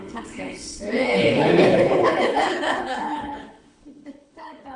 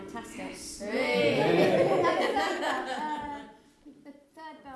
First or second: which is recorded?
second